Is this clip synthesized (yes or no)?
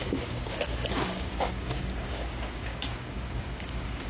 yes